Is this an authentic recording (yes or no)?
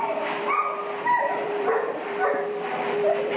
no